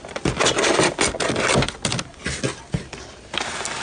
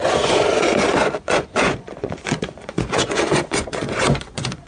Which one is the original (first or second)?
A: first